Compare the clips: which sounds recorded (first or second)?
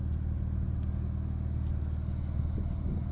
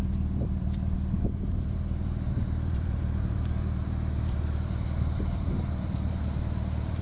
first